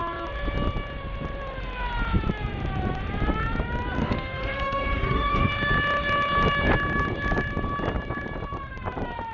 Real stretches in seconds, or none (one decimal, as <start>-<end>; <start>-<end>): 0.0-4.0; 5.5-9.3